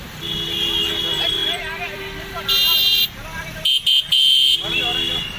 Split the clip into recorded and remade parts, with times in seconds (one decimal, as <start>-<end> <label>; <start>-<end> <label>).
0.0-1.4 recorded; 1.4-2.0 remade; 2.0-5.4 recorded